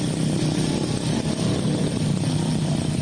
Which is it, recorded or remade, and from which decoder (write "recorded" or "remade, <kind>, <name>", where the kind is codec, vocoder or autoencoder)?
recorded